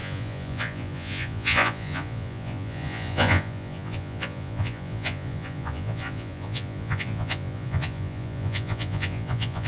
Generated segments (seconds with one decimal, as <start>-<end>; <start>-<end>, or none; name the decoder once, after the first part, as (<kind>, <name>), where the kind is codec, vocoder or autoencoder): 0.0-9.7 (vocoder, Vocos)